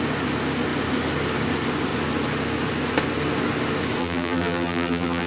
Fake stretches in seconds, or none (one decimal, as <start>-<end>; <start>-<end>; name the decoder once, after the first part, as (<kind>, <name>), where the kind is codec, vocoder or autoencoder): 4.0-5.3 (vocoder, BigVGAN v2)